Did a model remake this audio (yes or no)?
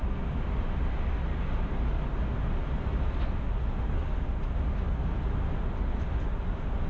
no